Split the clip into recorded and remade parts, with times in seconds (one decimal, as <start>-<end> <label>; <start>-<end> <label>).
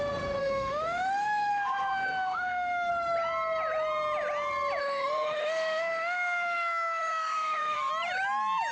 0.0-0.4 recorded; 0.4-2.9 remade; 2.9-4.8 recorded; 4.8-7.9 remade; 7.9-8.7 recorded